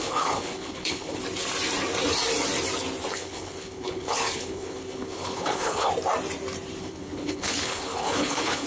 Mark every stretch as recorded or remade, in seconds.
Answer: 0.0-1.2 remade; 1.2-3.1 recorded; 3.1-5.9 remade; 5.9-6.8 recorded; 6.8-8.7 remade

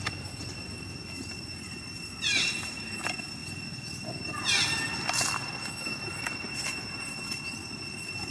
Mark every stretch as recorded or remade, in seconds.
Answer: 0.0-8.3 recorded

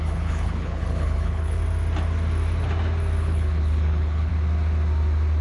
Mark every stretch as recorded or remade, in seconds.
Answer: 0.0-1.6 remade; 1.6-3.2 recorded; 3.2-4.3 remade; 4.3-5.4 recorded

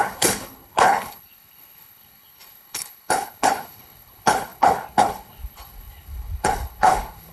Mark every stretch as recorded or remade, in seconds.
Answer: 0.0-7.3 remade